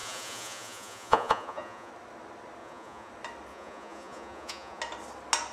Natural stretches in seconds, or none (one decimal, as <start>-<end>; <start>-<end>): 1.9-2.6; 3.1-3.5; 4.8-5.5